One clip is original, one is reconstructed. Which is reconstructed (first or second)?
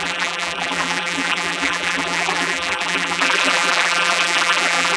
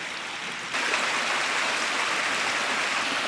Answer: first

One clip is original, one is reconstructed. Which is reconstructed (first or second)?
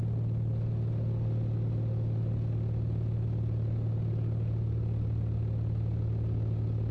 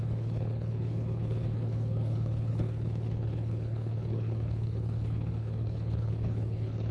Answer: second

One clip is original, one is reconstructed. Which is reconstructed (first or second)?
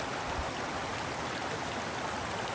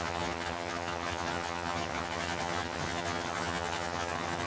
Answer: second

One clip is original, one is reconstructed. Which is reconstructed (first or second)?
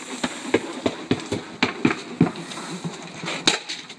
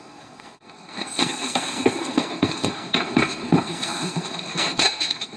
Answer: second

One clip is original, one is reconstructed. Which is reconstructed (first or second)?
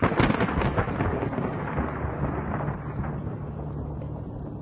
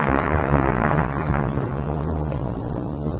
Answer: second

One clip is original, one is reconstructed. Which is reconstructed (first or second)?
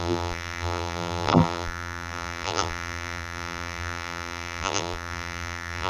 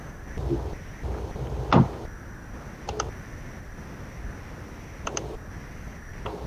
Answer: first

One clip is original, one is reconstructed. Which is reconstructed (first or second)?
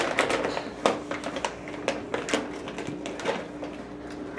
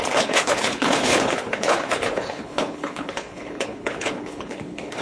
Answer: second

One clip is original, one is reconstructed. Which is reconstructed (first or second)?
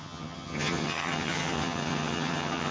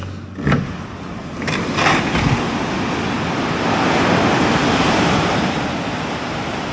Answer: first